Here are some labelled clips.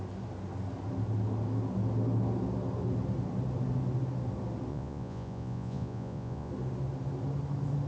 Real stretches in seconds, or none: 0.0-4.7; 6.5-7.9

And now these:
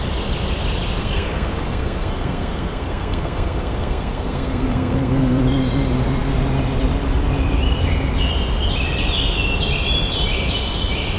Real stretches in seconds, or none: 0.0-1.0; 5.4-11.2

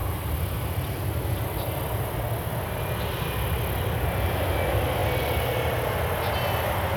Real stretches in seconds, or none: 0.0-7.0

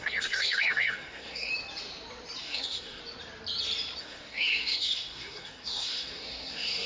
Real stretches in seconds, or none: 1.5-2.4; 3.0-4.0

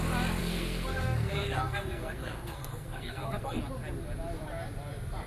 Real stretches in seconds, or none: 0.0-0.4; 3.6-5.3

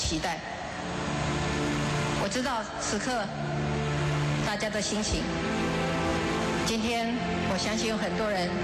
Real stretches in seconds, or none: 0.0-8.6

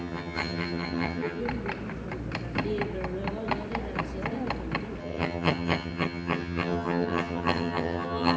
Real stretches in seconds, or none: 1.4-5.0